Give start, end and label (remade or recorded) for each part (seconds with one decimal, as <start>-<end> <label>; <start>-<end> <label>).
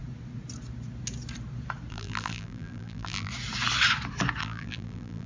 0.0-1.9 recorded; 1.9-3.3 remade; 3.3-4.4 recorded; 4.4-5.3 remade